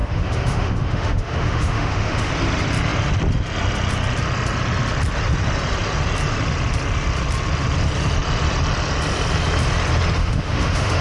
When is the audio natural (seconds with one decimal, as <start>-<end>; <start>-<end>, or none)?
2.3-10.2